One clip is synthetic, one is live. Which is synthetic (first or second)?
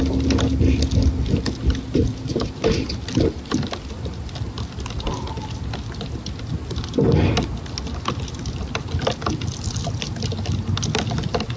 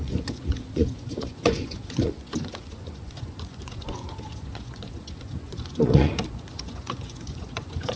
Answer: second